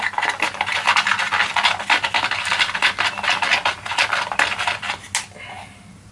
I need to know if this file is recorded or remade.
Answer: recorded